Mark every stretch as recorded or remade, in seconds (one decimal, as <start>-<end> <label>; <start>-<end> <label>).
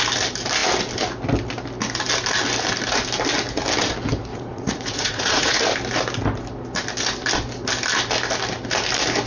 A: 0.0-4.3 recorded; 4.3-5.6 remade; 5.6-9.3 recorded